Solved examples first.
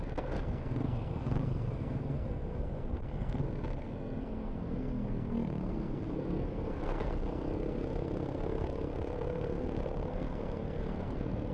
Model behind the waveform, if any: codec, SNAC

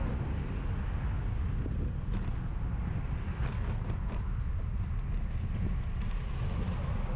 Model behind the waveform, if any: none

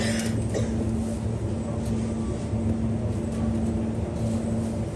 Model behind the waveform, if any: none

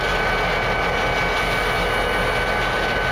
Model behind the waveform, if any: none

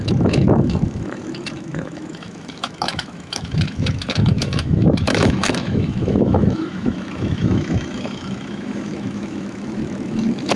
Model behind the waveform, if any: autoencoder, DAC-VAE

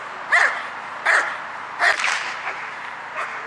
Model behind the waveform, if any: vocoder, BigVGAN v2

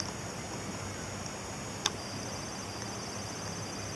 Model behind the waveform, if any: none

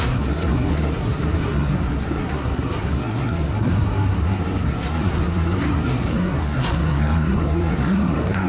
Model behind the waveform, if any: codec, SNAC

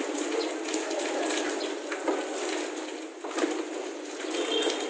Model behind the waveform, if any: none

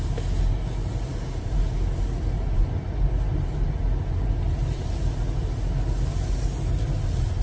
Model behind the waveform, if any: none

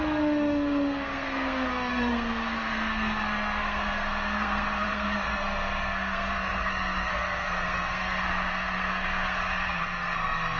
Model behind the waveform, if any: codec, SNAC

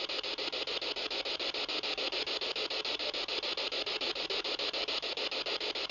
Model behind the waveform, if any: none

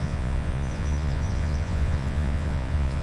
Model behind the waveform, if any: vocoder, Vocos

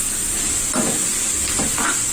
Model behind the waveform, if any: none